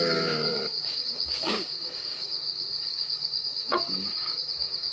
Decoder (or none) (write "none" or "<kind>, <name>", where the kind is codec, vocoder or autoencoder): codec, DAC